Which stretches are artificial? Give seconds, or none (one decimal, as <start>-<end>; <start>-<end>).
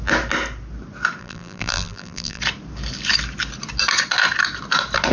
1.2-2.4